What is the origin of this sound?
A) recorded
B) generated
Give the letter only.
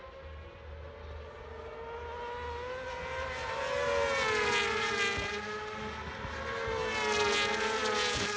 A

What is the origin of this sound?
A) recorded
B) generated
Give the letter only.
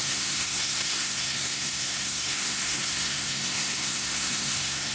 B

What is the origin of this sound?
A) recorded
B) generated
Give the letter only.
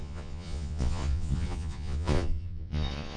B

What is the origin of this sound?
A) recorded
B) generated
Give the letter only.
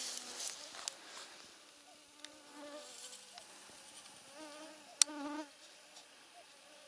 A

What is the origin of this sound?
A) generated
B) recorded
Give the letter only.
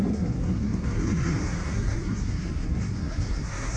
A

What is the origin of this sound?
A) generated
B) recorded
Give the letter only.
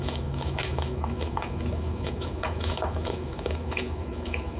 A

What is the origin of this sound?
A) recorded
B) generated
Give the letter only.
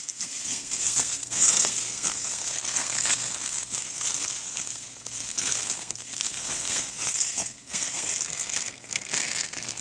B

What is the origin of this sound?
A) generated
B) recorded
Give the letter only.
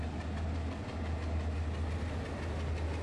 B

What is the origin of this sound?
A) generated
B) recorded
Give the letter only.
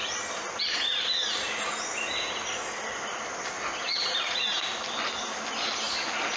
B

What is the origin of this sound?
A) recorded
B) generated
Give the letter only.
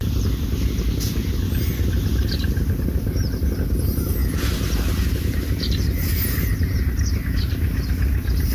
A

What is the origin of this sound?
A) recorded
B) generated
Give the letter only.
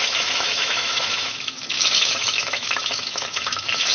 B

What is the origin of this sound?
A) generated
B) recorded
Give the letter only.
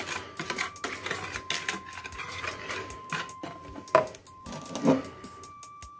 B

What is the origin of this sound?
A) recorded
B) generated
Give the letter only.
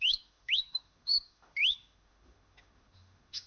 B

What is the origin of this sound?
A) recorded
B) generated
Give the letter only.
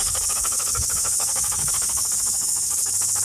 B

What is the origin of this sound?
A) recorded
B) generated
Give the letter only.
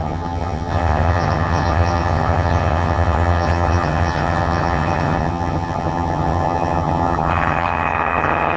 B